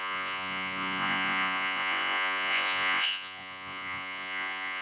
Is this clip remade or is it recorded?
remade